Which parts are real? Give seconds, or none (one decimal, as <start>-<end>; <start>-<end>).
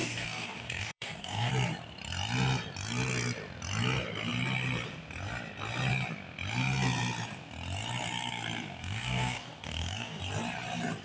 1.5-8.8; 10.2-11.0